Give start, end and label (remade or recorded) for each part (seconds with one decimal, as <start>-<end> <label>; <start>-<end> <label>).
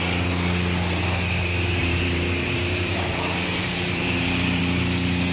0.0-1.8 recorded; 1.8-4.6 remade; 4.6-5.3 recorded